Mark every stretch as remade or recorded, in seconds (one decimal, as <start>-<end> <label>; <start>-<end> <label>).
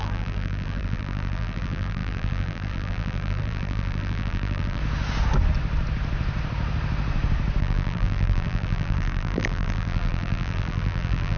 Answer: 0.0-4.8 remade; 4.8-7.6 recorded; 7.6-11.4 remade